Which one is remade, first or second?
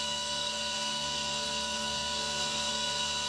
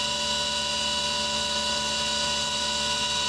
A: first